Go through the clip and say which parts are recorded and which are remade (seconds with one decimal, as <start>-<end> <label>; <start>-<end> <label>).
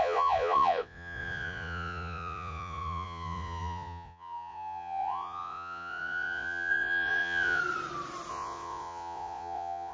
0.0-7.6 remade; 7.6-8.3 recorded; 8.3-9.9 remade